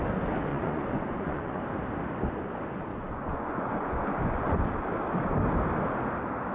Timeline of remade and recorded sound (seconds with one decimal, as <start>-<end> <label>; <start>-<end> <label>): 0.0-0.5 recorded; 0.5-1.6 remade; 1.6-2.9 recorded; 2.9-4.6 remade; 4.6-6.5 recorded